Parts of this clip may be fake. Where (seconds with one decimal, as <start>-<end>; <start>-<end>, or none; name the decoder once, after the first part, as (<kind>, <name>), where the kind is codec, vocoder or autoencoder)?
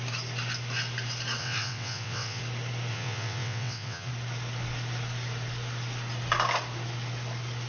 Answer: 1.4-2.4 (vocoder, WaveNeXt); 2.9-4.1